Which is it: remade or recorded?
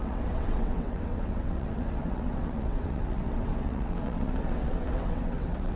remade